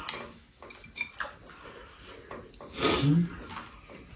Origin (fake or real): real